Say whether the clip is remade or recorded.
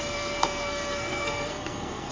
remade